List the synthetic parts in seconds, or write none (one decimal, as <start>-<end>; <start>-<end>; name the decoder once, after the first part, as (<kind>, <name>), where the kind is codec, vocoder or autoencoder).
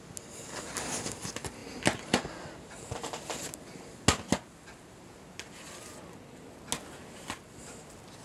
none